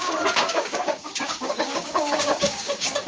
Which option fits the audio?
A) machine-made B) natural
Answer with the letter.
A